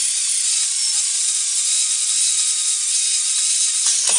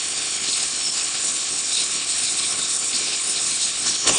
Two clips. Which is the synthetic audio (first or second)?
second